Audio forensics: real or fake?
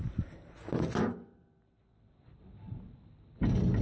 real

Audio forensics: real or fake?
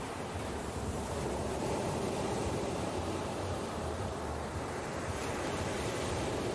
fake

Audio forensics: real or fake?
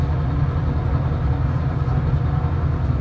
real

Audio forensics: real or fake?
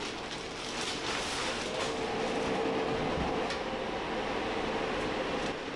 real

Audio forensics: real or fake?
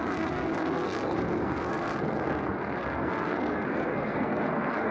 fake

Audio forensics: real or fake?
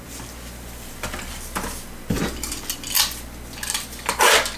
real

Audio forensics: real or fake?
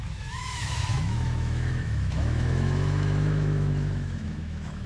fake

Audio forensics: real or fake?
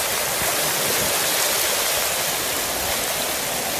real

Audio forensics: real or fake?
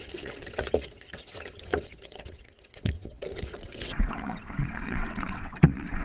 fake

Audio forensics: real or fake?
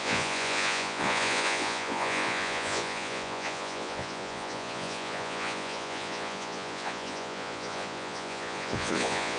fake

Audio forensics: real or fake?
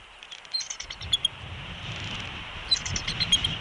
fake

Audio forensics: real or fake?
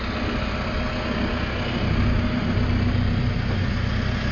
real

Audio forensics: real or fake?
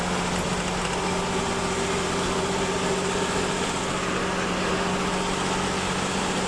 real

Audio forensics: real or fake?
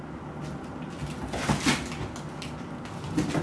real